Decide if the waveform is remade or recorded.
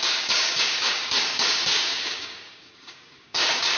remade